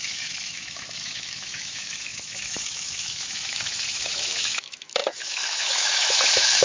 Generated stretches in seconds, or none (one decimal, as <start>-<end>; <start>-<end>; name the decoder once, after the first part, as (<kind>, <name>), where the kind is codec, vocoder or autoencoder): 0.0-6.6 (autoencoder, DAC-VAE)